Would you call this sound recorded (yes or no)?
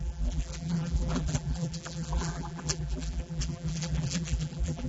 no